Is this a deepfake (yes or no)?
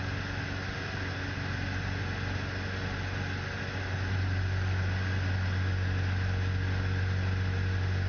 no